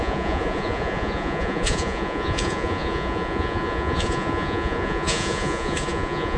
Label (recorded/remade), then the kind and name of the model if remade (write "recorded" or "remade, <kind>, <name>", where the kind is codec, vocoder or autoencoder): remade, vocoder, Vocos